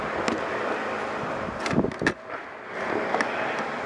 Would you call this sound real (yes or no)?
yes